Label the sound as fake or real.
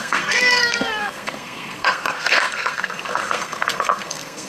fake